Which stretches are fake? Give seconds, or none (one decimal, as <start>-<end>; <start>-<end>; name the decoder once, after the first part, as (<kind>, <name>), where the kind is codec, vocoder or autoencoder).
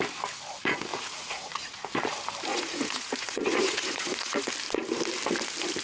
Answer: 0.9-1.9 (vocoder, Vocos); 2.5-4.5